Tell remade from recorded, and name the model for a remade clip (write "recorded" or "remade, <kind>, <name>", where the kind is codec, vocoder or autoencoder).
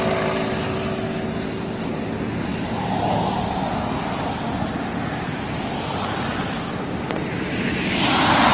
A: recorded